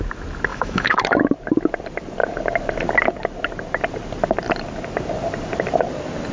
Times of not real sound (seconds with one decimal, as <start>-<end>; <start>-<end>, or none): 0.5-1.0